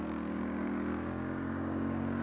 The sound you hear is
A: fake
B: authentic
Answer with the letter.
A